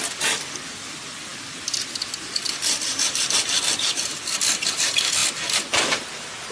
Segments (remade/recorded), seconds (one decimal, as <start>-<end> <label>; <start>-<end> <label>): 0.0-5.2 remade; 5.2-6.5 recorded